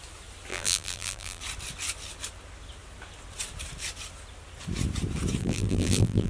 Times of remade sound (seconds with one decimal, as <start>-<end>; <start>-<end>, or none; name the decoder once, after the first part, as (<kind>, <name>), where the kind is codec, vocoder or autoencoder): 0.5-1.4 (vocoder, BigVGAN v2); 5.4-6.3